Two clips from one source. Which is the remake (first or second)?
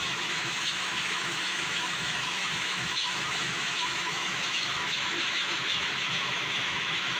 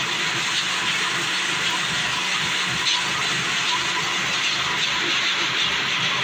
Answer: first